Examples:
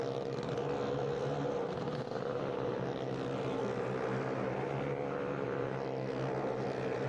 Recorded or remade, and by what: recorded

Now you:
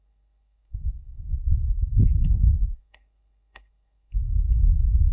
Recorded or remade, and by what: remade, codec, SNAC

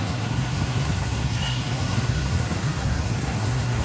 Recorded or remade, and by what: remade, codec, SNAC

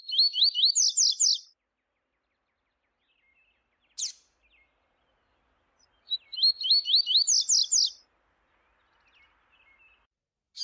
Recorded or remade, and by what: recorded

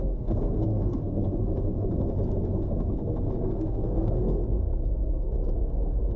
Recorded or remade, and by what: remade, codec, SNAC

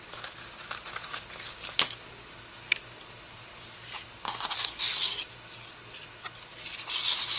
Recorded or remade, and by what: recorded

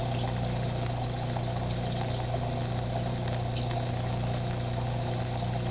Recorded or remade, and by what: recorded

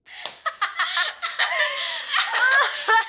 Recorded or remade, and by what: recorded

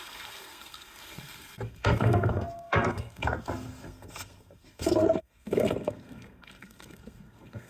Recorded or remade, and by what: remade, codec, SNAC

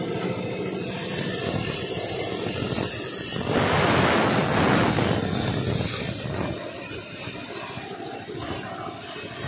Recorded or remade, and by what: recorded